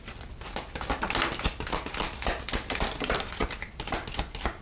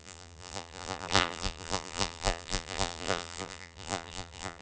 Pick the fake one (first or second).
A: second